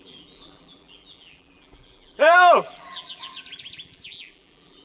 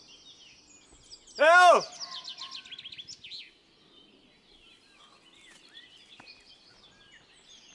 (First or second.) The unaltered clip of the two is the second